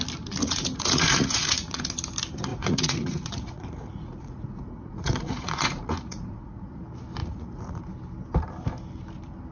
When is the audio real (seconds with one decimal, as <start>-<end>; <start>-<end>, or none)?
0.0-0.4; 1.8-2.5; 6.8-7.2; 7.8-9.5